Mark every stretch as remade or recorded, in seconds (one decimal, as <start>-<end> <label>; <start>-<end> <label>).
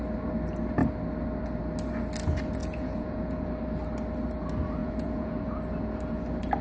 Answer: 0.0-2.6 recorded; 2.6-3.5 remade; 3.5-4.8 recorded; 4.8-5.6 remade; 5.6-6.6 recorded